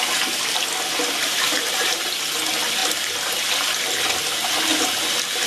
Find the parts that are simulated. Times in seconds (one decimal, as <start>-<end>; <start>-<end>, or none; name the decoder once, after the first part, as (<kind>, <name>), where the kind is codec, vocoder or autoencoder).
1.2-2.0 (vocoder, BigVGAN v2)